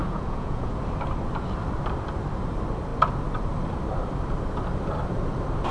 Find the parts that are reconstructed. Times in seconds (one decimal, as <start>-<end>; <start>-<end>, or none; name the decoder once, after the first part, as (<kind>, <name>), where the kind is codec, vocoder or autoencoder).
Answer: 0.0-0.7 (vocoder, Vocos)